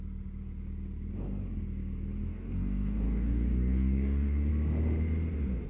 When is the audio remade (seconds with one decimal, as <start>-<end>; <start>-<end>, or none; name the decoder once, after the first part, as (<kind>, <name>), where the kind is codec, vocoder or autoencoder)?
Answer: 2.2-4.5 (codec, DAC)